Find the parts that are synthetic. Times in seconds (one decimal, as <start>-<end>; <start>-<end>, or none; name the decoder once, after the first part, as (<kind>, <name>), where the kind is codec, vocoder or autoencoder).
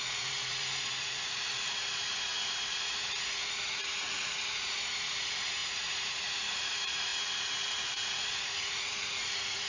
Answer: 0.0-9.7 (vocoder, Vocos)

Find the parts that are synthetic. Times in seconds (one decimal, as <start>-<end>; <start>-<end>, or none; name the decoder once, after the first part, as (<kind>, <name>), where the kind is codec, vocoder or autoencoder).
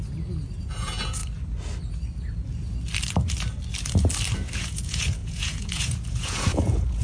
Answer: 0.6-1.2 (vocoder, Vocos); 4.6-7.0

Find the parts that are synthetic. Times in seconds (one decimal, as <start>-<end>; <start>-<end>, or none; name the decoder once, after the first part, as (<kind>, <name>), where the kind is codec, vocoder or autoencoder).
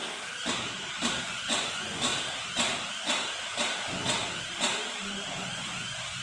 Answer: 1.2-2.1 (vocoder, Vocos); 5.5-6.2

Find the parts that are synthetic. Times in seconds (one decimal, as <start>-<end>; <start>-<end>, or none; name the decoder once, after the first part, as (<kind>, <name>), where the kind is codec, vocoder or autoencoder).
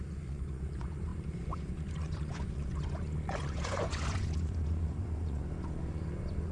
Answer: 0.0-6.5 (vocoder, Vocos)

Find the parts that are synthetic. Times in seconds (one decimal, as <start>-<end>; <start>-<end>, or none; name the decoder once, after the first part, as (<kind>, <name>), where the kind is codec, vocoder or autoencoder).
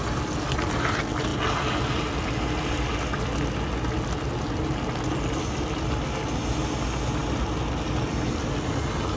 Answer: none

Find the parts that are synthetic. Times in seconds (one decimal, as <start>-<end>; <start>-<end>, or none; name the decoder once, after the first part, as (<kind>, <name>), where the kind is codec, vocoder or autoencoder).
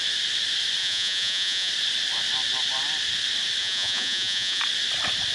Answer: 0.8-1.7 (vocoder, Vocos); 3.6-4.6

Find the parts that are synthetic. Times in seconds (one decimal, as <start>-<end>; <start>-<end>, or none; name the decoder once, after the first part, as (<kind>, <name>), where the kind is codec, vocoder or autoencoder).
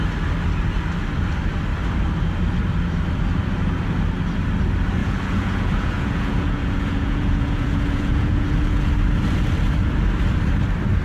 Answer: 5.0-8.9 (vocoder, Vocos)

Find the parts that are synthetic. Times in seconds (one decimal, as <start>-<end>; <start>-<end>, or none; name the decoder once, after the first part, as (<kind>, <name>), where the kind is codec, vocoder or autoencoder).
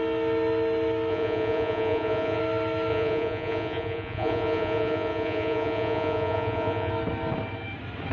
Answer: 1.1-2.4 (vocoder, Vocos); 2.9-6.9